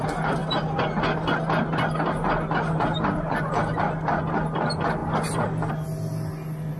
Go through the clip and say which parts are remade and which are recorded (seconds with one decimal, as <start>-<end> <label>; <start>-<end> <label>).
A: 0.0-6.8 recorded